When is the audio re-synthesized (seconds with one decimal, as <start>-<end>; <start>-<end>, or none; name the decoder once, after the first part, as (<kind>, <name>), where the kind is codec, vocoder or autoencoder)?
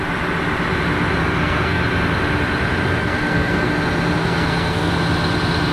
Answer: 1.2-1.8 (codec, SNAC); 3.0-3.7; 4.2-4.9